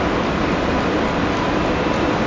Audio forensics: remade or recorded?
recorded